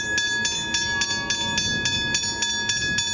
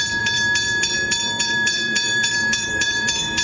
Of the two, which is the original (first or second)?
first